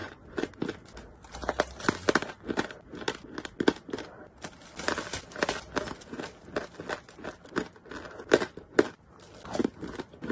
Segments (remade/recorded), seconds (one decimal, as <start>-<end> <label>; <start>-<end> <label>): 0.0-0.5 remade; 0.5-10.3 recorded